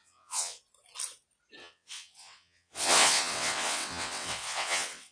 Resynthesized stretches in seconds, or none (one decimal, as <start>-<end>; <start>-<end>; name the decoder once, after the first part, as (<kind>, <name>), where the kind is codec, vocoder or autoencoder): 0.0-0.6 (vocoder, WaveNeXt); 1.6-5.1